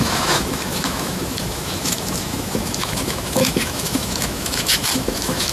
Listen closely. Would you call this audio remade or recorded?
remade